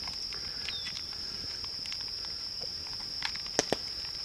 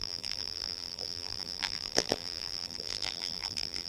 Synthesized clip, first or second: second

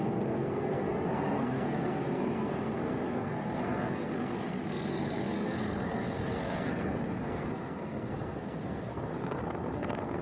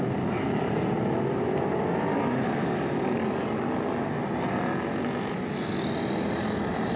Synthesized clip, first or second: first